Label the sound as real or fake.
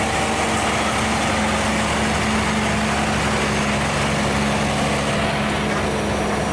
real